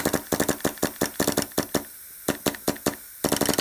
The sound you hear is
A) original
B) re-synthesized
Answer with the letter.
A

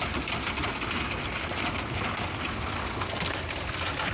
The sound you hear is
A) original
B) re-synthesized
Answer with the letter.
A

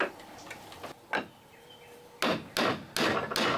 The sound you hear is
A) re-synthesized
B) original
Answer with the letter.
B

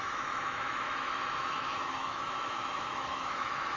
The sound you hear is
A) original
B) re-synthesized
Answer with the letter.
B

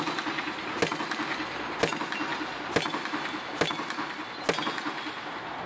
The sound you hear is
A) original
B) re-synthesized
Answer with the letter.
A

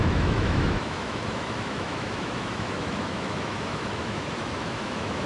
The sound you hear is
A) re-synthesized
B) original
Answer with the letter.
A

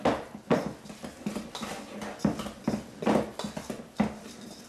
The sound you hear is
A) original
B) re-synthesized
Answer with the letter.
A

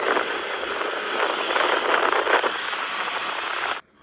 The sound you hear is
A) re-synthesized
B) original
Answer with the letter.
B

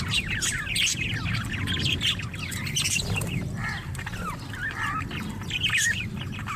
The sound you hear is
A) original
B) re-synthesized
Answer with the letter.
A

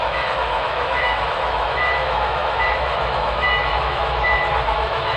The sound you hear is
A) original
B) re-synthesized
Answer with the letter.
B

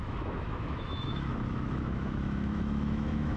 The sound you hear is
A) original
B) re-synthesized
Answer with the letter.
B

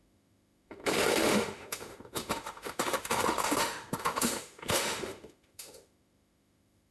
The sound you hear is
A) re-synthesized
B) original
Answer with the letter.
A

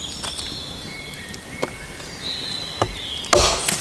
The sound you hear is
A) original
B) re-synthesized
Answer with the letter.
A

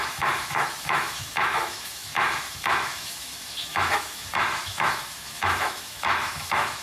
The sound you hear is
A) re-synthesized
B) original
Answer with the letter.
A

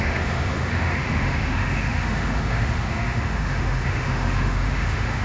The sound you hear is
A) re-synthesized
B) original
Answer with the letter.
A